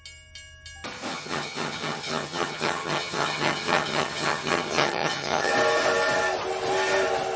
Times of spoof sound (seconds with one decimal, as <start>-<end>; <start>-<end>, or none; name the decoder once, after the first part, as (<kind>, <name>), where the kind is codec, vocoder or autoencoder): 1.1-5.5 (vocoder, HiFi-GAN)